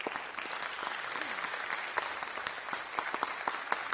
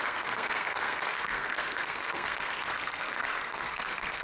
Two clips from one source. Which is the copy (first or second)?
second